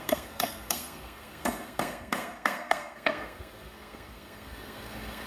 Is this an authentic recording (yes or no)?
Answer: no